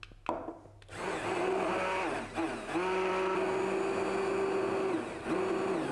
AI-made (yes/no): no